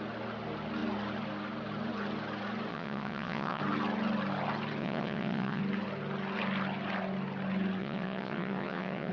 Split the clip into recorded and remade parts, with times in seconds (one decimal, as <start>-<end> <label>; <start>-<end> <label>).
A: 0.0-2.7 recorded; 2.7-3.6 remade; 3.6-4.8 recorded; 4.8-5.6 remade; 5.6-7.8 recorded; 7.8-9.1 remade